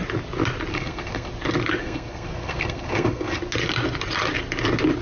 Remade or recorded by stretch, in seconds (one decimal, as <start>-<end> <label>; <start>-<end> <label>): 0.0-0.7 recorded; 0.7-1.3 remade; 1.3-1.8 recorded; 1.8-3.4 remade; 3.4-5.0 recorded